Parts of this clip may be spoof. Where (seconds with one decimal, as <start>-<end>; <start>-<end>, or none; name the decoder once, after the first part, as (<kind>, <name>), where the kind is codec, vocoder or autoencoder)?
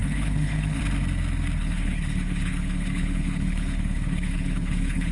0.0-0.8 (codec, HILCodec); 1.6-5.1